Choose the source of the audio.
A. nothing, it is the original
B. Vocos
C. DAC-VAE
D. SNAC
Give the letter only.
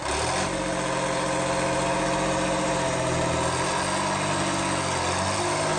A